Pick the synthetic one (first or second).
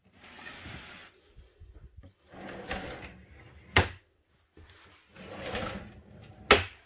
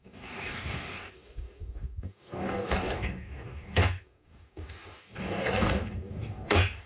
second